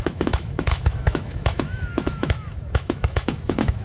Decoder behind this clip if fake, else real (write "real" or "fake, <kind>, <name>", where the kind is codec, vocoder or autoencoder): fake, autoencoder, DAC-VAE